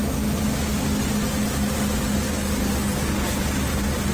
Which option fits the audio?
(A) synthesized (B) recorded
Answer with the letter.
B